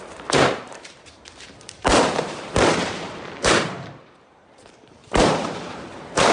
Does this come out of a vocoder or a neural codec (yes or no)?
yes